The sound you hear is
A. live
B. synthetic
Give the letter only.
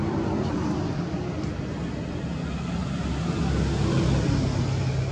A